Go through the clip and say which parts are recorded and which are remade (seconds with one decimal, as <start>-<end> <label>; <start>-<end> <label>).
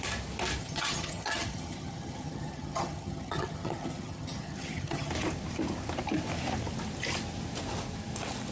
0.0-0.6 recorded; 0.6-5.1 remade; 5.1-8.5 recorded